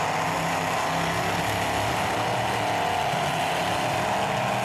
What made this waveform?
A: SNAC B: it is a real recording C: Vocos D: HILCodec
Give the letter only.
B